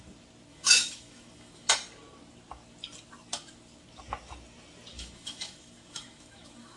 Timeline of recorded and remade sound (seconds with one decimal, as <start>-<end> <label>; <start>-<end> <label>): 0.0-0.5 recorded; 0.5-1.7 remade; 1.7-4.9 recorded; 4.9-6.8 remade